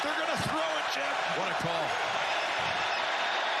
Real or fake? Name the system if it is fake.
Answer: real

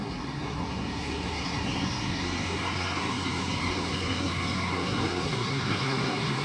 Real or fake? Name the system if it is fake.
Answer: fake, codec, SNAC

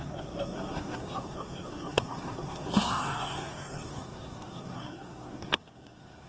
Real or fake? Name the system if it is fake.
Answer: fake, codec, SNAC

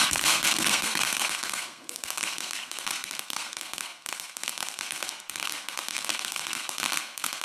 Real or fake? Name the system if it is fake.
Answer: fake, codec, SNAC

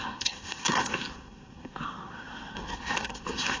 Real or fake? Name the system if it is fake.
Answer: fake, codec, SNAC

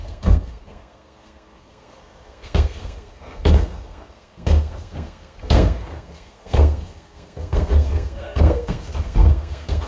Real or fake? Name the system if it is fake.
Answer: fake, codec, SNAC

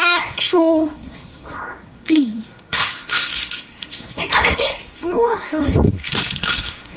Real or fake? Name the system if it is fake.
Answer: fake, codec, SNAC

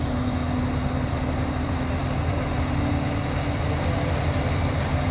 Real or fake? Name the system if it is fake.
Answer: real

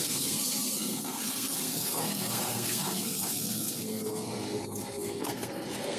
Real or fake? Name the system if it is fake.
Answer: fake, codec, SNAC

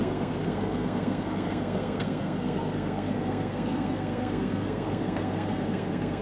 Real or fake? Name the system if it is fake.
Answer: fake, codec, SNAC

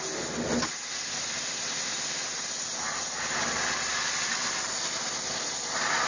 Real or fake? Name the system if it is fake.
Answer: real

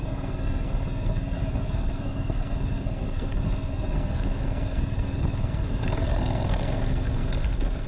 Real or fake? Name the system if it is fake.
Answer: fake, codec, SNAC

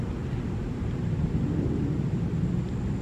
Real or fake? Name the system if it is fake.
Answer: real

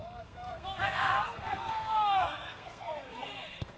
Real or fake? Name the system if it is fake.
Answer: fake, codec, SNAC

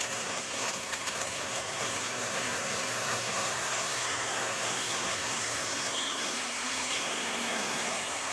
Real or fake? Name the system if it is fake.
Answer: fake, codec, SNAC